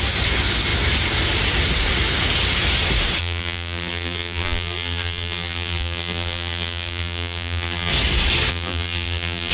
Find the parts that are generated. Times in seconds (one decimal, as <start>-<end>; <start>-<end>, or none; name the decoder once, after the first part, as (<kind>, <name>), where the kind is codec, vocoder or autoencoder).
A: 3.2-7.9 (vocoder, BigVGAN v2); 8.5-9.5